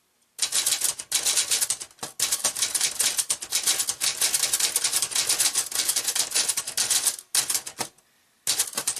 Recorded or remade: recorded